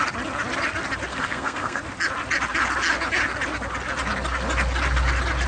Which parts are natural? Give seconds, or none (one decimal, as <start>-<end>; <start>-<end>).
0.0-1.1; 1.8-5.5